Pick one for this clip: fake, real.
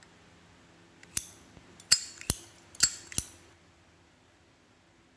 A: real